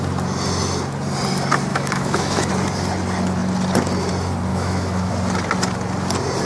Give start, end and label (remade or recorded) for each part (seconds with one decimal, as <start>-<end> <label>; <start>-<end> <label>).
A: 0.0-1.7 recorded; 1.7-2.5 remade; 2.5-4.5 recorded; 4.5-5.1 remade; 5.1-6.4 recorded